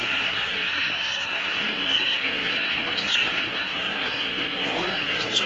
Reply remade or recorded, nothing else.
remade